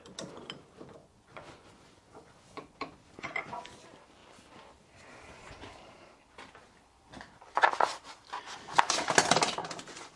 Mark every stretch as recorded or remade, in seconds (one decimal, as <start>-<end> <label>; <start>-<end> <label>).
0.0-1.0 recorded; 1.0-3.6 remade; 3.6-9.6 recorded; 9.6-10.2 remade